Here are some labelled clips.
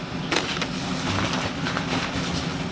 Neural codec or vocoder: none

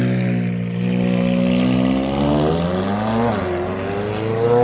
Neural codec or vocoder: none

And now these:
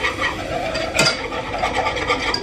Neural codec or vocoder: none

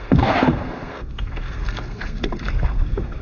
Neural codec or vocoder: codec, SNAC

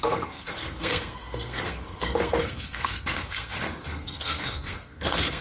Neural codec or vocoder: codec, SNAC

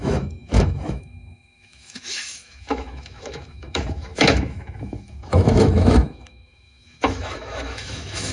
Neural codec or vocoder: autoencoder, DAC-VAE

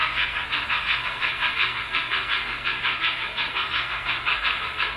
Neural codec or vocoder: codec, SNAC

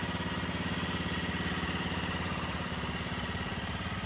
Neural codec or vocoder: none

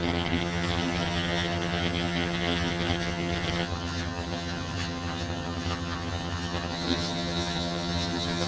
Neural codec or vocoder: vocoder, HiFi-GAN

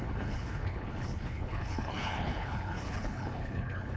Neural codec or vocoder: codec, HILCodec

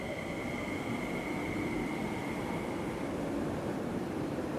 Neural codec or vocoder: vocoder, BigVGAN v2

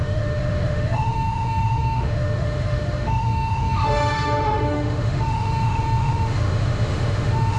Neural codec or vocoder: autoencoder, DAC-VAE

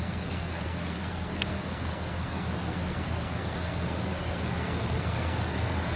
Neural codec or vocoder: codec, SNAC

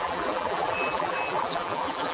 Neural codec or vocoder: vocoder, BigVGAN v2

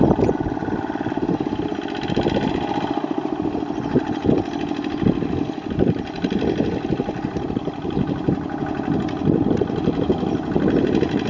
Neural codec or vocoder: none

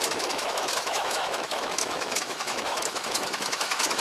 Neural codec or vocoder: autoencoder, DAC-VAE